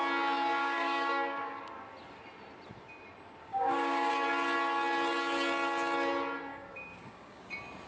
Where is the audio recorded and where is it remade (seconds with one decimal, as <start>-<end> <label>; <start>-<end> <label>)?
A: 0.0-0.6 recorded; 0.6-1.6 remade; 1.6-3.5 recorded; 3.5-4.1 remade; 4.1-6.5 recorded; 6.5-7.5 remade; 7.5-7.9 recorded